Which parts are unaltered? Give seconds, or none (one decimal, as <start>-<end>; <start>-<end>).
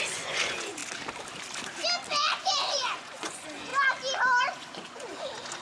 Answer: 0.8-2.4; 3.7-4.4